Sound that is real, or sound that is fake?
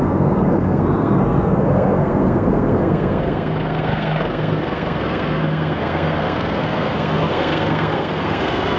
fake